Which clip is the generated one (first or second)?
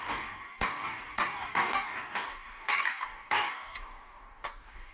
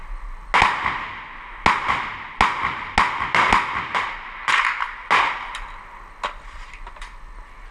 first